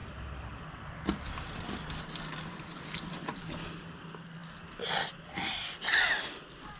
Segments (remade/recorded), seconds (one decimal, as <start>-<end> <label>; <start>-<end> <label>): 0.0-6.8 recorded